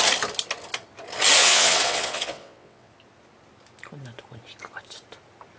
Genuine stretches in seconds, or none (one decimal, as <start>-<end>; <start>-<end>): 0.0-1.4; 2.9-5.6